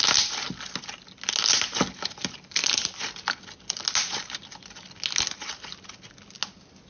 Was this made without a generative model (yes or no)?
yes